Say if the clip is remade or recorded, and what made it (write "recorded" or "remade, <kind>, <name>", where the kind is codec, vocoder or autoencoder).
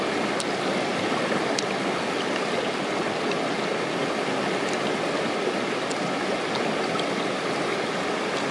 recorded